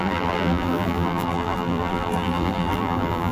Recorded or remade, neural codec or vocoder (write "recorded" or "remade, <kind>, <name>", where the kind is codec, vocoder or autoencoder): remade, vocoder, BigVGAN v2